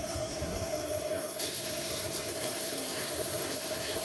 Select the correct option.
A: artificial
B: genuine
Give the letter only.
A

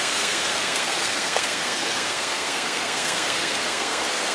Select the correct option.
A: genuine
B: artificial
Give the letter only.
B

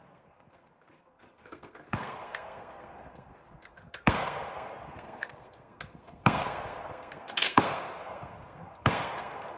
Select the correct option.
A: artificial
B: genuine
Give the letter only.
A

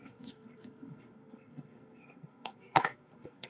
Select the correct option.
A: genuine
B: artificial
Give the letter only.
B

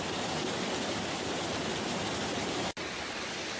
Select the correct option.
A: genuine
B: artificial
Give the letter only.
A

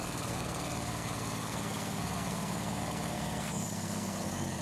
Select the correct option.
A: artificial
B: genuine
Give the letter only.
A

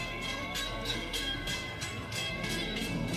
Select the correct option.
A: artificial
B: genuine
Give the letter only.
A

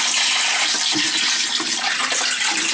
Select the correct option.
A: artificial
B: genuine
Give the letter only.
B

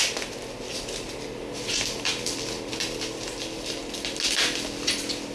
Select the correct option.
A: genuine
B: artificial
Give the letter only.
A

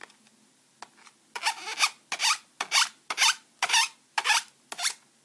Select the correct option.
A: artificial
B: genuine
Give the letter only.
B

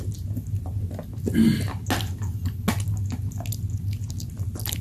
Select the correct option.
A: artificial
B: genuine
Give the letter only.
B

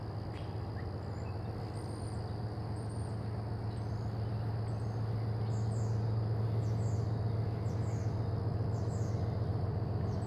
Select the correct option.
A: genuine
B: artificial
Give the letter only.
A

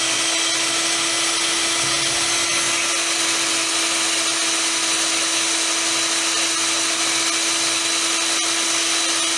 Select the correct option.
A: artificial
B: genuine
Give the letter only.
B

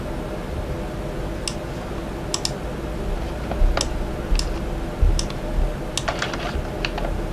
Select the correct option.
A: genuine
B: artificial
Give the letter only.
A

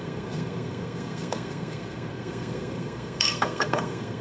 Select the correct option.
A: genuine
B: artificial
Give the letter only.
B